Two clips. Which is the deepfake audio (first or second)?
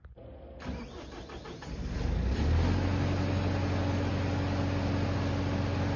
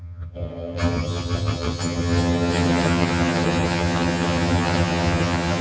second